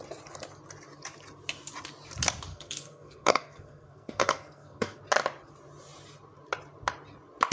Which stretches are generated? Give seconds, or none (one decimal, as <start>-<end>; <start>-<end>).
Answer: 2.5-5.0